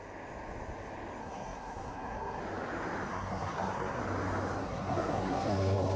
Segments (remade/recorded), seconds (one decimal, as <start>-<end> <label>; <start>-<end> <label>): 0.0-1.2 recorded; 1.2-2.4 remade; 2.4-3.1 recorded; 3.1-4.0 remade; 4.0-4.6 recorded; 4.6-6.0 remade